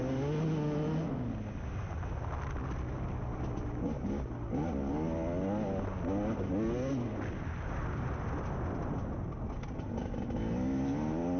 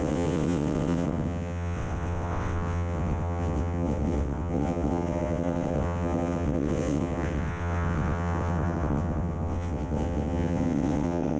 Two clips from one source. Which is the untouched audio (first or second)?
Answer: first